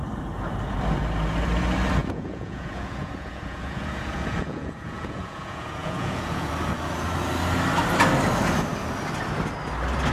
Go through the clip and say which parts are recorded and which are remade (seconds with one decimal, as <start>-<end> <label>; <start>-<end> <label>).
0.0-2.0 recorded; 2.0-6.5 remade; 6.5-10.1 recorded